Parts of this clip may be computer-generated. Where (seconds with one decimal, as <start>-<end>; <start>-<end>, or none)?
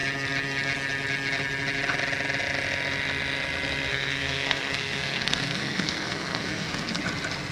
3.9-7.0